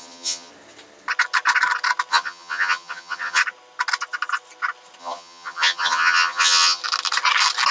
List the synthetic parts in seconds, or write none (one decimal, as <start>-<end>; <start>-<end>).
0.0-0.5; 2.1-3.4; 5.0-6.8